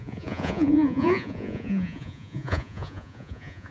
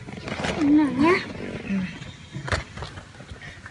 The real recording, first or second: second